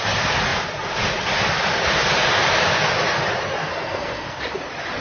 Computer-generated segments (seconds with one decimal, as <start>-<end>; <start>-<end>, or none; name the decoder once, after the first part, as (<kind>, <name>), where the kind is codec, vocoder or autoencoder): 3.6-4.4 (codec, SNAC)